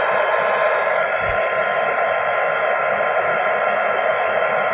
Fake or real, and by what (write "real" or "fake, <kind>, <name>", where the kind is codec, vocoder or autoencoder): real